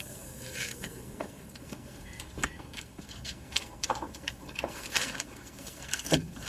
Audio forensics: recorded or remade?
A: remade